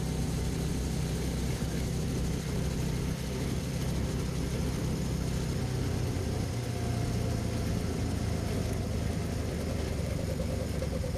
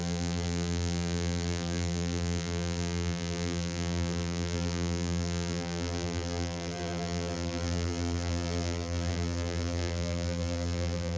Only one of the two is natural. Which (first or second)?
first